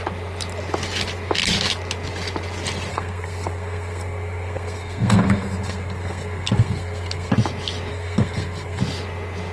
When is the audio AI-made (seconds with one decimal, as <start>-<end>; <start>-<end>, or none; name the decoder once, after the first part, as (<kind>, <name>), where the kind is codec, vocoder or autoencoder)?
2.9-7.3 (codec, SNAC); 7.9-8.8